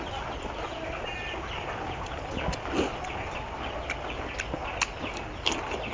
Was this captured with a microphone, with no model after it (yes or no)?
yes